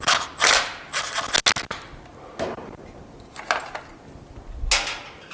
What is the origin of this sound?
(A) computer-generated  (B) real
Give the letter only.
B